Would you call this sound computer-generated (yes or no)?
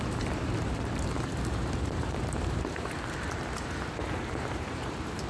yes